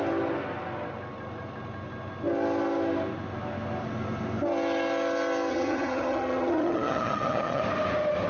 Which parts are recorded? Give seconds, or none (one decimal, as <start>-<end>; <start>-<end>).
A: 0.0-5.5; 7.6-8.3